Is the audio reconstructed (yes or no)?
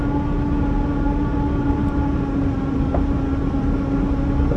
no